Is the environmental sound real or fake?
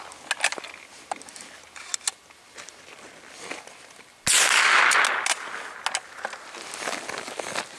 real